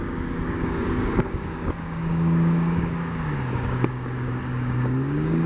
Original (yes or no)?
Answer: no